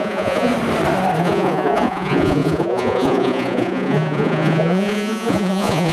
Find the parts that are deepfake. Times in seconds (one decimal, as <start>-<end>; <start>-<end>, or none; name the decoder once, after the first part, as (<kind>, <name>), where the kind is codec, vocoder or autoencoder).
0.0-0.5 (vocoder, Vocos); 1.2-5.9

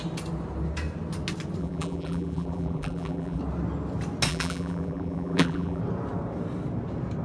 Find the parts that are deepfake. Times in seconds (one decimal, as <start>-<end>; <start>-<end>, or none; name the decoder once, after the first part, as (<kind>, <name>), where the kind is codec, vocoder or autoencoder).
1.6-3.4 (vocoder, BigVGAN v2); 4.3-5.8

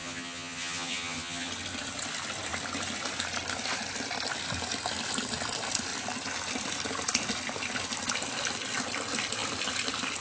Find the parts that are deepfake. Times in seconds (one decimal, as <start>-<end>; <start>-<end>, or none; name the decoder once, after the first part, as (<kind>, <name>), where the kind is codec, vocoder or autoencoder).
0.0-1.5 (vocoder, HiFi-GAN)

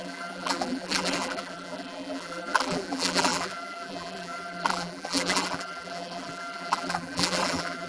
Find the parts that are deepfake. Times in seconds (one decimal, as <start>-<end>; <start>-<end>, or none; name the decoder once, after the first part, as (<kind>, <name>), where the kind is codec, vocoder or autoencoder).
0.0-7.9 (vocoder, BigVGAN v2)

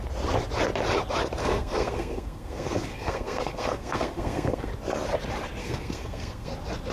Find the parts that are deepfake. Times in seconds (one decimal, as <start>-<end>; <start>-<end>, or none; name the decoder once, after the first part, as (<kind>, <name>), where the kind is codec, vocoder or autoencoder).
1.4-4.7 (codec, SNAC); 5.6-6.5

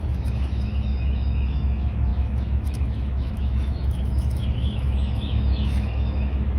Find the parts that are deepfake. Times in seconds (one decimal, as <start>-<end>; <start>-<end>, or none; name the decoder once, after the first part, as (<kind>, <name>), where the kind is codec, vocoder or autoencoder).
0.0-6.6 (autoencoder, DAC-VAE)

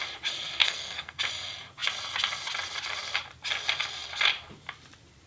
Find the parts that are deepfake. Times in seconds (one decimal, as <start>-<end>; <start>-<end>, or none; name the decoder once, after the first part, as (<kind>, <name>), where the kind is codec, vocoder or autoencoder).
0.6-1.2 (codec, SNAC)